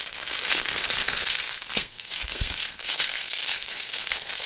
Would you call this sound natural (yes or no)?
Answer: no